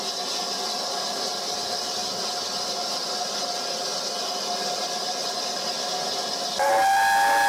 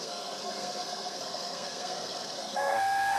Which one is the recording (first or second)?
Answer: first